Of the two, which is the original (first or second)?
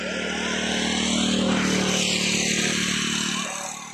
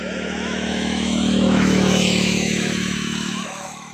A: first